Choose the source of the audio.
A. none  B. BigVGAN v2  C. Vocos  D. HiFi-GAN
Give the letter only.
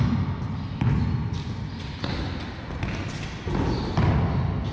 A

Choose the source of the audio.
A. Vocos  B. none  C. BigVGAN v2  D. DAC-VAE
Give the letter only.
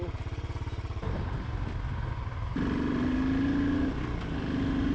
B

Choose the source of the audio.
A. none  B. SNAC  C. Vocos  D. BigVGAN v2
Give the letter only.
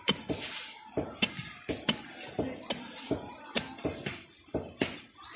A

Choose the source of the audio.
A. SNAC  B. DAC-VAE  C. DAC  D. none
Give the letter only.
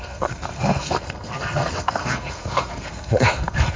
A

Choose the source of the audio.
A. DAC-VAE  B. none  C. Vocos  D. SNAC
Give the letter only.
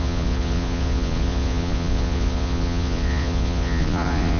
C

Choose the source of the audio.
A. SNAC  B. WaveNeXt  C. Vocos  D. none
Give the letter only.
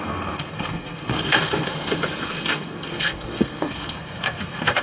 A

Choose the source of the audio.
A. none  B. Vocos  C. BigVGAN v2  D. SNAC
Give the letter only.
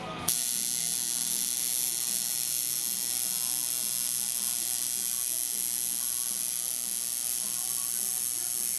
A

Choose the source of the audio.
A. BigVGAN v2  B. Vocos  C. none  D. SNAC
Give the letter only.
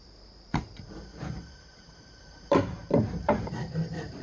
A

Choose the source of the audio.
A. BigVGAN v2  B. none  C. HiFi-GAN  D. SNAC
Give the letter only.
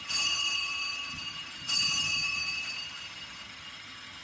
C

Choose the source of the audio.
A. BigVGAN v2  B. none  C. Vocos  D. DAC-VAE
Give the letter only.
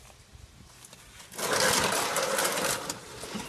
B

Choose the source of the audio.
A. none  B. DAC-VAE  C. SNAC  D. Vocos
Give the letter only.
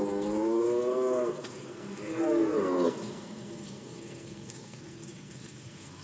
C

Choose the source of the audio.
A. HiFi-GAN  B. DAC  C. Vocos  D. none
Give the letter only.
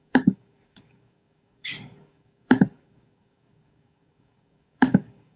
B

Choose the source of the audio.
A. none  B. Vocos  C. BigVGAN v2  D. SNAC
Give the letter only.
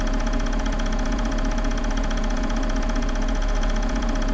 B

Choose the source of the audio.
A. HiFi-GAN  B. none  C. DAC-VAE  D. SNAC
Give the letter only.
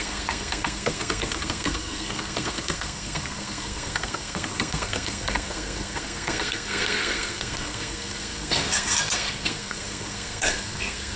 D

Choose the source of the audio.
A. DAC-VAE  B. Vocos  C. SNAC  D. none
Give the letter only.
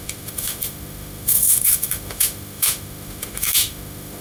A